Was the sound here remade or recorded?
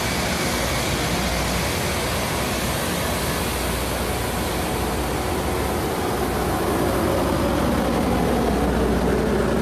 recorded